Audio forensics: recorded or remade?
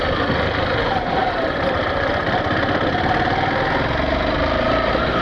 recorded